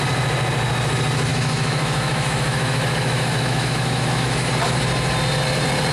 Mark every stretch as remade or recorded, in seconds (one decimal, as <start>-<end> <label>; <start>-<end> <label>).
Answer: 0.0-1.3 recorded; 1.3-4.5 remade; 4.5-5.9 recorded